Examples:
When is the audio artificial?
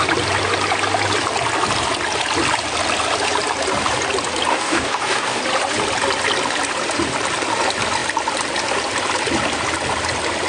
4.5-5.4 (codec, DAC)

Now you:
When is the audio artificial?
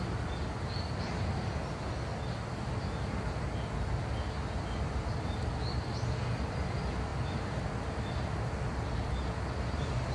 none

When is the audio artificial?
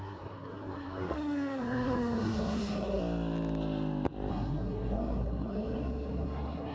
0.0-3.0 (codec, SNAC); 4.3-6.7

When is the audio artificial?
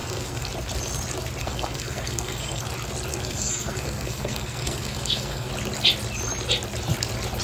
0.0-0.5 (codec, SNAC); 1.4-2.6; 3.1-5.5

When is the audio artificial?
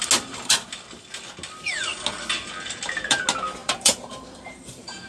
3.6-5.1 (vocoder, BigVGAN v2)